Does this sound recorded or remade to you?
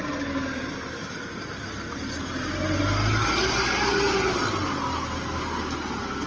recorded